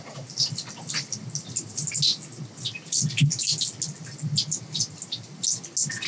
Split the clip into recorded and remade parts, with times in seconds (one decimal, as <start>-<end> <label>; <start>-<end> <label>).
0.0-6.1 recorded

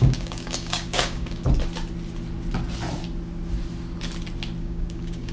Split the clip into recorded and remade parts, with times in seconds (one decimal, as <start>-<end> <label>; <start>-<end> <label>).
0.0-1.4 remade; 1.4-4.6 recorded; 4.6-5.3 remade

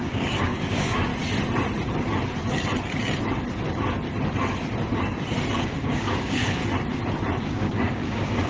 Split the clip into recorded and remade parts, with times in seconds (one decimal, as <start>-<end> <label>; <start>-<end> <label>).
0.0-1.1 remade; 1.1-5.6 recorded; 5.6-6.6 remade; 6.6-7.4 recorded; 7.4-8.5 remade

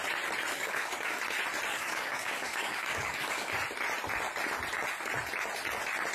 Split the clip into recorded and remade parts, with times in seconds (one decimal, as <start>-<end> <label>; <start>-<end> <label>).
0.0-0.5 recorded; 0.5-1.2 remade; 1.2-1.7 recorded; 1.7-3.5 remade; 3.5-6.1 recorded

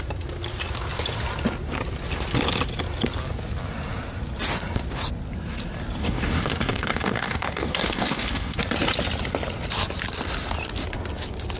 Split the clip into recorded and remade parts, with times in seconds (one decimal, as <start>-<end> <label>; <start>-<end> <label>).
0.0-6.0 recorded; 6.0-8.6 remade; 8.6-11.6 recorded